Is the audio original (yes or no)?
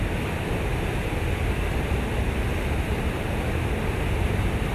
yes